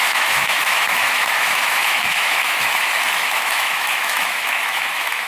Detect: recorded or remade remade